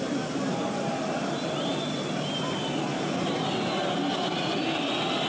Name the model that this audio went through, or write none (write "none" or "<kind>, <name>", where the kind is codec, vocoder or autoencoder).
none